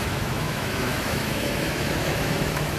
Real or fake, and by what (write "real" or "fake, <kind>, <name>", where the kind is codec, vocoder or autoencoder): fake, autoencoder, DAC-VAE